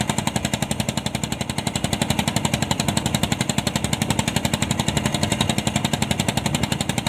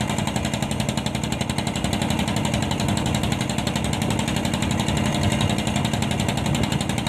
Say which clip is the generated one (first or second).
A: first